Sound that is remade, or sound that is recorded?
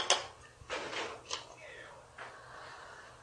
recorded